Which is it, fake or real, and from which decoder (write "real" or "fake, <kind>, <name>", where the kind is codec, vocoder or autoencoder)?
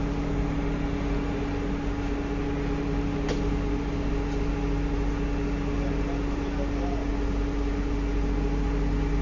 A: real